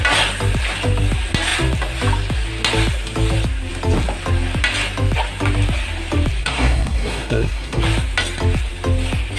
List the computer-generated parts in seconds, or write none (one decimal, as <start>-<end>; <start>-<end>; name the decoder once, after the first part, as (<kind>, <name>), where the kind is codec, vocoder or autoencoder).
6.4-7.8 (codec, SNAC)